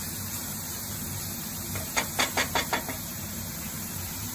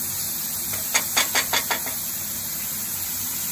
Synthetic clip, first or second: first